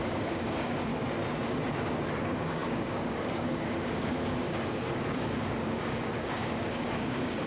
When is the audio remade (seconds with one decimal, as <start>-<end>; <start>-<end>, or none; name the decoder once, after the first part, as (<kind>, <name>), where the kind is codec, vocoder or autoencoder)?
0.0-0.9 (codec, DAC); 2.2-7.5